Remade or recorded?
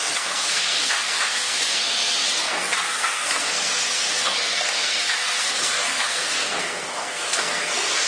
remade